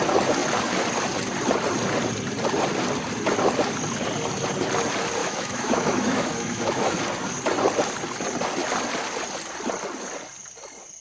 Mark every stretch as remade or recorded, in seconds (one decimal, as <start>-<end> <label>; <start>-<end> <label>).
0.0-5.2 recorded; 5.2-7.0 remade; 7.0-11.0 recorded